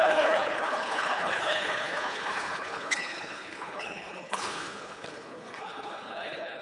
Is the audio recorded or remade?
remade